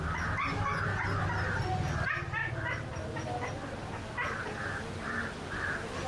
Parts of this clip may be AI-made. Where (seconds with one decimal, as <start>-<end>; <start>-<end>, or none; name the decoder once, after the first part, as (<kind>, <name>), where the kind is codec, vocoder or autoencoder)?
none